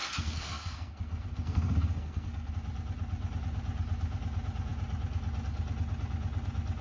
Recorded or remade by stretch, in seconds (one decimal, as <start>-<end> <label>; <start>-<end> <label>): 0.0-2.5 remade; 2.5-6.8 recorded